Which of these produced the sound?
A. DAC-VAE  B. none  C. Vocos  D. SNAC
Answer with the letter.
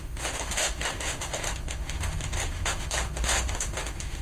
A